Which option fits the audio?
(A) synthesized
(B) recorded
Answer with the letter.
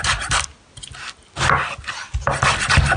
B